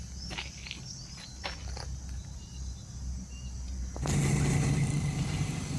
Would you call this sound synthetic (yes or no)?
no